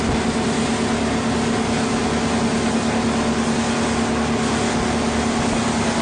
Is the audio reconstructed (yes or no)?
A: no